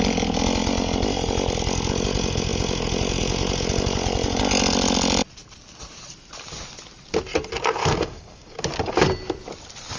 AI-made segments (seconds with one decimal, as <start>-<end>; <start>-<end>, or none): 7.8-8.6